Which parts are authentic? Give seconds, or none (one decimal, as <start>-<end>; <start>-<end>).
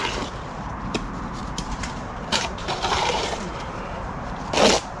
0.7-1.4; 4.4-5.0